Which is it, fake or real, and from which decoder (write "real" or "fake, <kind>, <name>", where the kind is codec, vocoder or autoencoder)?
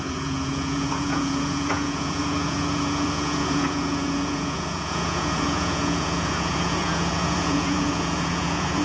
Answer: fake, vocoder, Vocos